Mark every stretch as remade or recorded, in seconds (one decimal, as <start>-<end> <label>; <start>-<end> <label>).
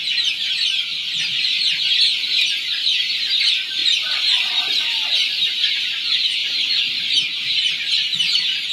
0.0-3.8 recorded; 3.8-4.6 remade; 4.6-6.4 recorded; 6.4-7.0 remade; 7.0-8.7 recorded